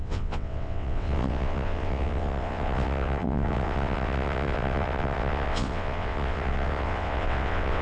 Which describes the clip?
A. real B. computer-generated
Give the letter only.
B